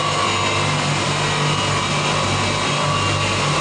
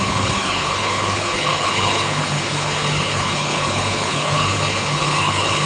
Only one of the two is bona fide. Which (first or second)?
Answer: first